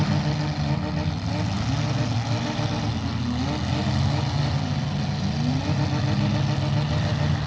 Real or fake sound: real